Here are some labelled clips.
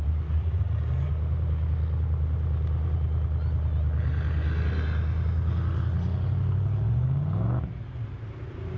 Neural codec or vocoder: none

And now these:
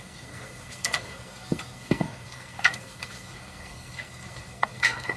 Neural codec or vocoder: codec, SNAC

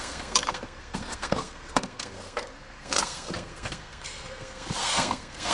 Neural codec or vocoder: codec, SNAC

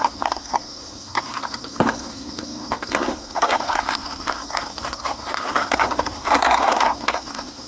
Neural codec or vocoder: codec, SNAC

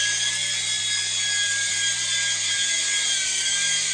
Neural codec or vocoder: none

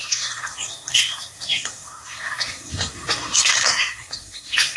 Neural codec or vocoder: codec, SNAC